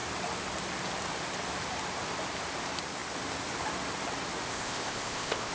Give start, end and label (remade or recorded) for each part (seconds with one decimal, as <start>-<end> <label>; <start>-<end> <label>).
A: 0.0-4.5 recorded; 4.5-5.5 remade